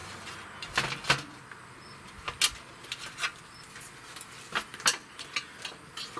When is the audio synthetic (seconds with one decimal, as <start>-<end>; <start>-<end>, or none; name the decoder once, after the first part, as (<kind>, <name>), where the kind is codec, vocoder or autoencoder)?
none